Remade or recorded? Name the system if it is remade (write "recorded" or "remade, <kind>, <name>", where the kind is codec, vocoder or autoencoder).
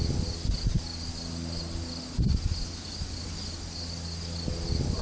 recorded